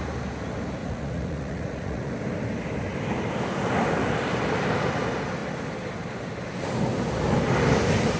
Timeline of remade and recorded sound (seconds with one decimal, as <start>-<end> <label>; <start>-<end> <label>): 0.0-0.8 recorded; 0.8-2.1 remade; 2.1-8.2 recorded

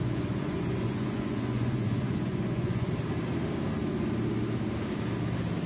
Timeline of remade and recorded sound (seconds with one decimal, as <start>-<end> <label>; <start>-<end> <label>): 0.0-2.9 remade; 2.9-5.7 recorded

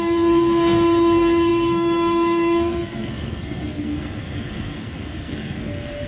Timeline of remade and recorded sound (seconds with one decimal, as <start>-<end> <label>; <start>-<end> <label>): 0.0-6.1 remade

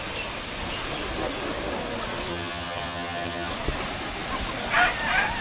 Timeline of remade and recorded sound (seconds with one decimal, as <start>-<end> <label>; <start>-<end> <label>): 0.0-2.3 recorded; 2.3-3.5 remade; 3.5-5.4 recorded

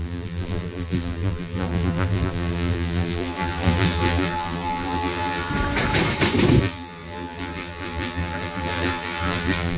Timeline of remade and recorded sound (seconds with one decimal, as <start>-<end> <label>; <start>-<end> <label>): 0.0-5.5 remade; 5.5-6.6 recorded; 6.6-9.8 remade

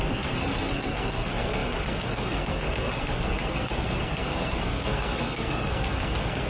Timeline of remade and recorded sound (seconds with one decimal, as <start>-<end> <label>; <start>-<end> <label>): 0.0-6.5 remade

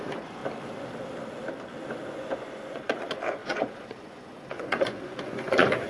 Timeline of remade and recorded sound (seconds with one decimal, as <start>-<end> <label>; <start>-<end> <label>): 0.0-0.4 remade; 0.4-2.1 recorded; 2.1-5.9 remade

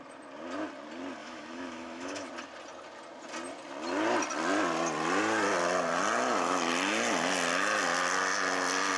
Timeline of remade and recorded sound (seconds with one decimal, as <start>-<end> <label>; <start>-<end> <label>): 0.0-1.2 recorded; 1.2-2.3 remade; 2.3-9.0 recorded